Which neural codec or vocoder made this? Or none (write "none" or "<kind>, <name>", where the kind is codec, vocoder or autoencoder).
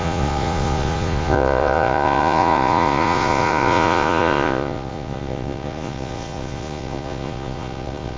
vocoder, Vocos